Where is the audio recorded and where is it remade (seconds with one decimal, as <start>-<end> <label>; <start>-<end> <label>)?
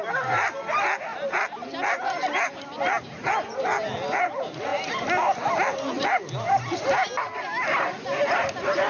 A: 0.0-8.9 recorded